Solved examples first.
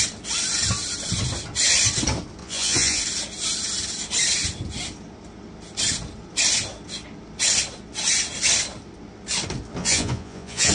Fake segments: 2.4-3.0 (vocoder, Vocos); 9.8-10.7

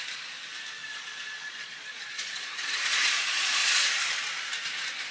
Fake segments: 0.8-3.9 (vocoder, Vocos)

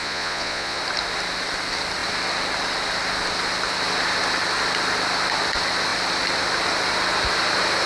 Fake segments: 0.0-0.8 (vocoder, Vocos)

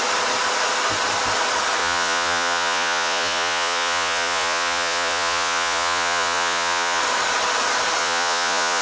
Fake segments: 1.8-7.0 (vocoder, Vocos); 8.0-8.8

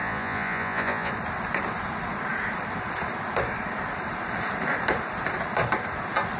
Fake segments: 0.0-1.1 (vocoder, Vocos)